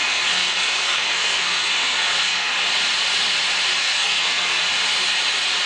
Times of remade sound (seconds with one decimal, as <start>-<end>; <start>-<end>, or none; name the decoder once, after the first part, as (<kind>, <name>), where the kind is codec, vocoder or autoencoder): 0.0-2.5 (codec, SNAC); 3.8-4.6